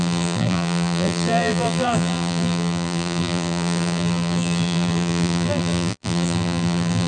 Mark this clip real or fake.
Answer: fake